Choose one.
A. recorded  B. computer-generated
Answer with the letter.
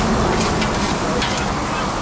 A